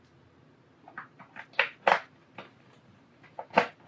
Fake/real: real